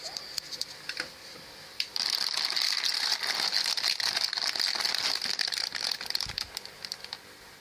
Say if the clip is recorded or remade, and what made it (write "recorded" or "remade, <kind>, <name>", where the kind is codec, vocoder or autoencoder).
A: recorded